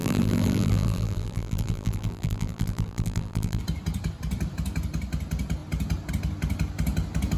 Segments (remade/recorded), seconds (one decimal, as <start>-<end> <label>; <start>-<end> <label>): 0.0-3.6 remade; 3.6-7.4 recorded